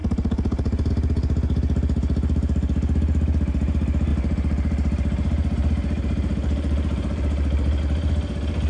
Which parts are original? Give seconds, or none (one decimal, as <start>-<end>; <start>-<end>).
0.0-4.1; 7.8-8.7